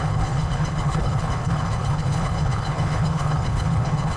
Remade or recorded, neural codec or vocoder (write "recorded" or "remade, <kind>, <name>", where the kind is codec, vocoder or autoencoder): remade, codec, HILCodec